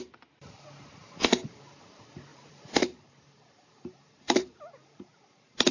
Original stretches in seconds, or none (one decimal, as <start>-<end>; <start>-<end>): 0.0-2.3